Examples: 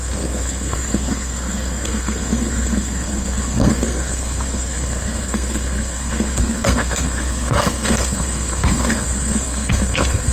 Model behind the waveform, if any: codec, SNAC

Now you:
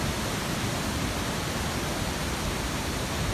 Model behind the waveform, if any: none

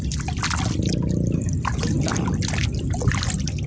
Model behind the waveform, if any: none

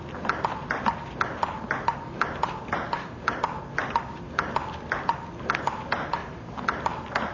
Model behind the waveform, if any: none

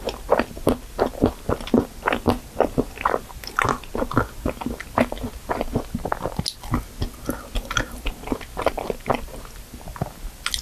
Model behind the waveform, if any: none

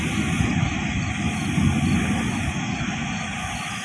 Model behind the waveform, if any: none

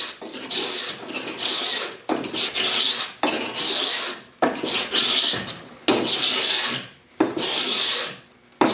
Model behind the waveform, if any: none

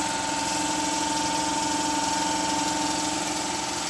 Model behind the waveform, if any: none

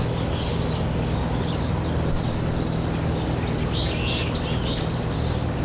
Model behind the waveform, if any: none